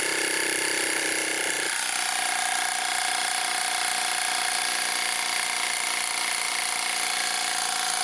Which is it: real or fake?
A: real